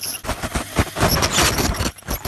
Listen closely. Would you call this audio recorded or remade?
recorded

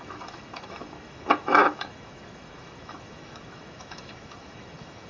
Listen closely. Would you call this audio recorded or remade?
remade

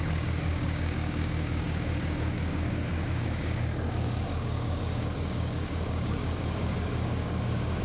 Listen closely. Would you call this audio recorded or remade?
remade